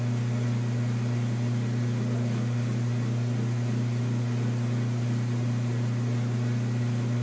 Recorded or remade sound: recorded